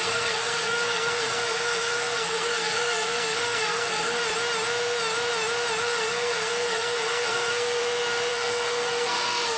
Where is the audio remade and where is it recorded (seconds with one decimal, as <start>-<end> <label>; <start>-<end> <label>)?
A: 0.0-4.2 remade; 4.2-5.8 recorded; 5.8-7.8 remade; 7.8-8.3 recorded; 8.3-9.6 remade